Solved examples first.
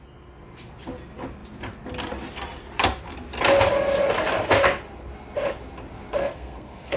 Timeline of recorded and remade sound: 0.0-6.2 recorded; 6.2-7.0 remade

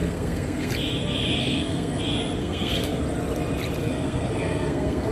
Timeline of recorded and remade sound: 0.0-0.7 remade; 0.7-1.4 recorded; 1.4-2.0 remade; 2.0-2.4 recorded; 2.4-3.0 remade; 3.0-3.8 recorded; 3.8-5.1 remade

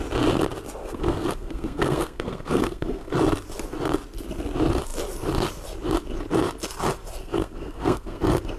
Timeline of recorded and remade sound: 0.0-0.8 recorded; 0.8-3.1 remade; 3.1-7.2 recorded; 7.2-8.2 remade; 8.2-8.6 recorded